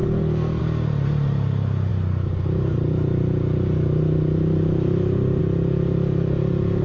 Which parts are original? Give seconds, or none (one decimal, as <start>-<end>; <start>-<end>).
0.6-6.8

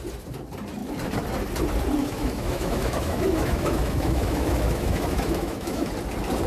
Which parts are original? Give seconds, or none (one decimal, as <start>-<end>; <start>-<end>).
0.0-2.0; 5.9-6.5

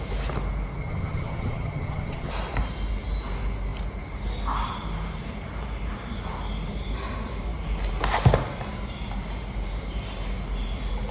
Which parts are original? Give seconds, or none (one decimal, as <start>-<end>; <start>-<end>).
0.0-0.8; 2.3-11.1

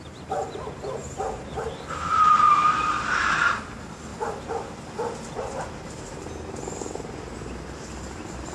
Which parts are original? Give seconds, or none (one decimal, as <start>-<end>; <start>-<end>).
0.0-1.0; 2.5-4.1; 4.8-8.5

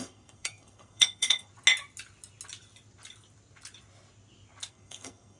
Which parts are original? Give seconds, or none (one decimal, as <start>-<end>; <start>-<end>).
1.5-4.7

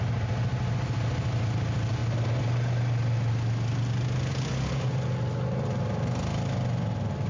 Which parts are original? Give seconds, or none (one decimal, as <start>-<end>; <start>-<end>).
0.0-7.3

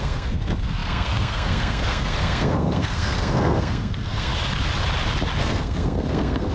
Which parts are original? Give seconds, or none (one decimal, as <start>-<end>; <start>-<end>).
4.3-5.4

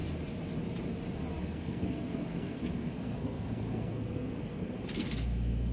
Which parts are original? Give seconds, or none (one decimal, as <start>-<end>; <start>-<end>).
0.0-1.4